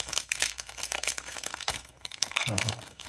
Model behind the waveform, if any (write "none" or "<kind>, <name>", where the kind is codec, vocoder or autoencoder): codec, SNAC